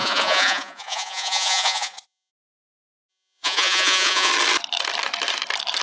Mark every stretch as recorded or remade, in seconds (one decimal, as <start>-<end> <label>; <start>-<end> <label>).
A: 0.0-2.3 remade; 2.3-3.1 recorded; 3.1-4.3 remade; 4.3-5.8 recorded